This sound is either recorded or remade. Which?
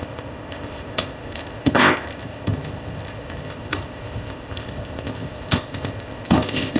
remade